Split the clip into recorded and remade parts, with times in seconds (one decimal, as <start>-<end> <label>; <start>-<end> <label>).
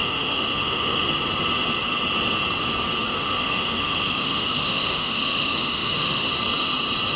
0.0-1.1 remade; 1.1-3.1 recorded; 3.1-6.3 remade; 6.3-7.2 recorded